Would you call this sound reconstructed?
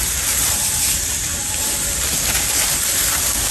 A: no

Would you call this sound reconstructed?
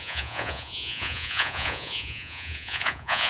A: yes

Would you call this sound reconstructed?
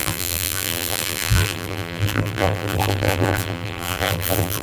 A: yes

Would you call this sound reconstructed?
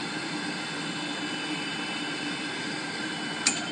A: no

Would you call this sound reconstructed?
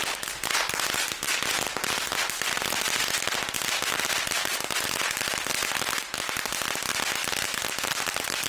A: no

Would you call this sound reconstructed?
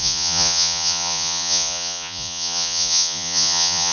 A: yes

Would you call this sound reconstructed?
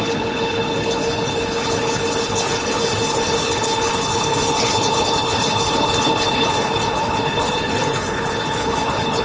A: yes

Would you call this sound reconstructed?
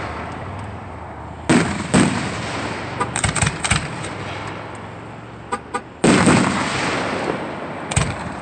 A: no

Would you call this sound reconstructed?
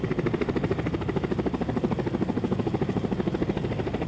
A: no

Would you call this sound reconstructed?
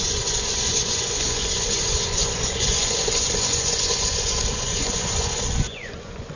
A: yes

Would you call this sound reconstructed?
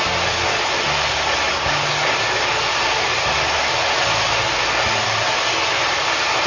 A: no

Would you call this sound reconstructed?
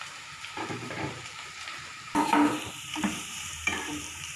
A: yes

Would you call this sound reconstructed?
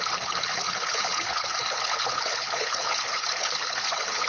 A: yes